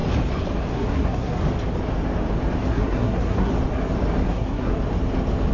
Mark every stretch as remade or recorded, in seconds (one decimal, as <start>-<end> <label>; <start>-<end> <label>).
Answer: 0.0-0.7 recorded; 0.7-1.4 remade; 1.4-2.7 recorded; 2.7-3.5 remade; 3.5-4.2 recorded; 4.2-4.7 remade; 4.7-5.5 recorded